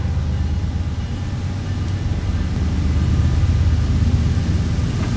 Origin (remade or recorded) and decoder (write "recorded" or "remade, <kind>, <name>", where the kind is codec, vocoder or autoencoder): recorded